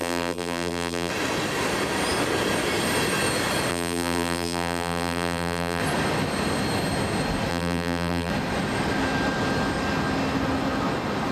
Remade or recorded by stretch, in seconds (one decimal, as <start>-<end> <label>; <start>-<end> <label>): 0.0-1.1 remade; 1.1-3.7 recorded; 3.7-5.8 remade; 5.8-7.5 recorded; 7.5-8.3 remade; 8.3-11.3 recorded